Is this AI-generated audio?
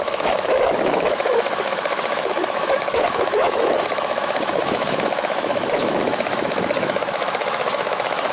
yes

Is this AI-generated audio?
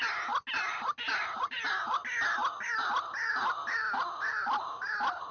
no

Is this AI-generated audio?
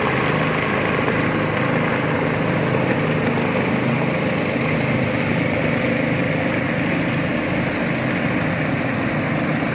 no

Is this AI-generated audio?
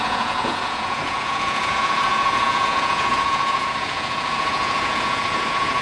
yes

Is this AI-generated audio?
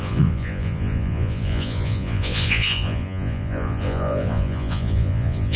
yes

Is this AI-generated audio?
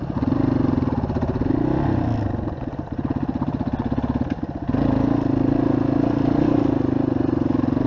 no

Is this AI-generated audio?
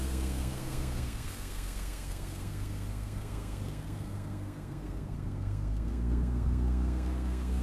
yes